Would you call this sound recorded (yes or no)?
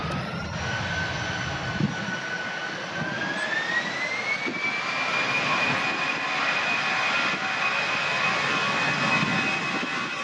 yes